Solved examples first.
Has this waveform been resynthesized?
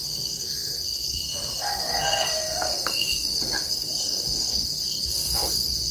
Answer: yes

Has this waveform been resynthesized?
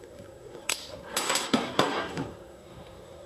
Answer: yes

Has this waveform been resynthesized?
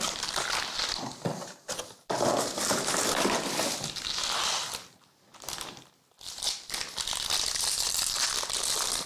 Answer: no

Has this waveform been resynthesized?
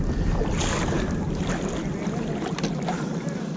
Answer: no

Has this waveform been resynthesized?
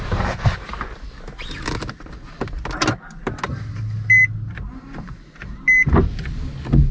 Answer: no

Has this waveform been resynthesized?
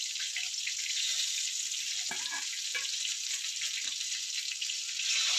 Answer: no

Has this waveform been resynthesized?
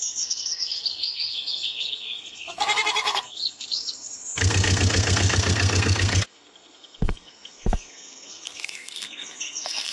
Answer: yes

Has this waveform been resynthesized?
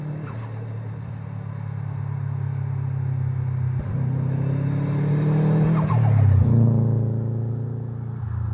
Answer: no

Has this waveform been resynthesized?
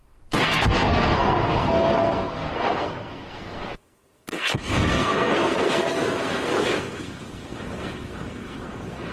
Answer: yes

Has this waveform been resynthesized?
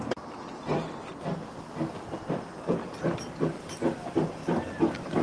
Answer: no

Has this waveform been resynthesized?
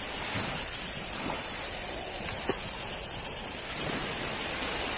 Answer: no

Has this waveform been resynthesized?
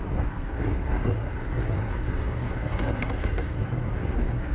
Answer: yes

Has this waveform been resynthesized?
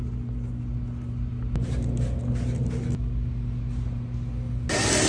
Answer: no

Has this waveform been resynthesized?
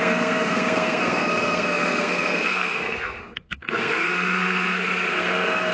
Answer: yes